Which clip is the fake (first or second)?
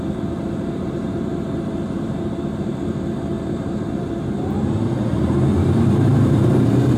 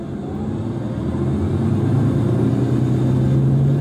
first